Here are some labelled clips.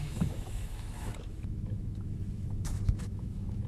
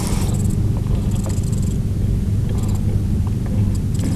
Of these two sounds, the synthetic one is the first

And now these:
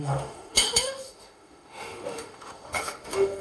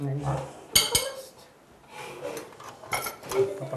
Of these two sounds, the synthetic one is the first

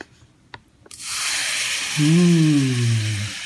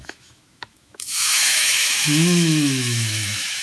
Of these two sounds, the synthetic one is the second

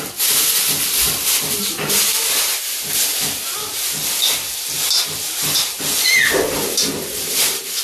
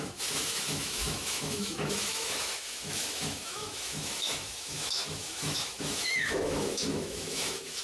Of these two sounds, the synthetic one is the second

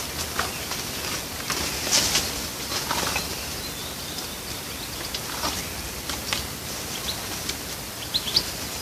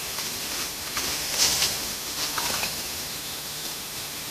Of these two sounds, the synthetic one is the second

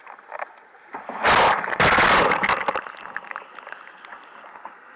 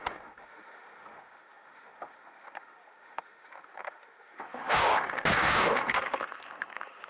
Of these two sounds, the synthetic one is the second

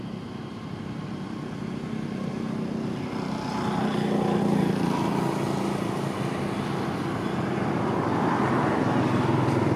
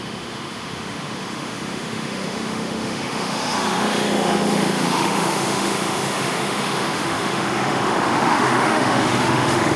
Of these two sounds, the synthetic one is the second